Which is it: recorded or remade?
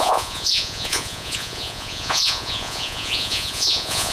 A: remade